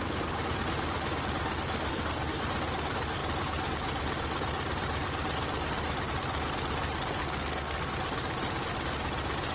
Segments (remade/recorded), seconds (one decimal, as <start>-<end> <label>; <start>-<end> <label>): 0.0-1.9 recorded; 1.9-2.4 remade; 2.4-7.2 recorded; 7.2-7.9 remade; 7.9-9.5 recorded